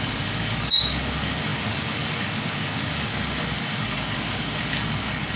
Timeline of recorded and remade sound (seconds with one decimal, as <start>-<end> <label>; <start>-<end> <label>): 0.0-5.4 remade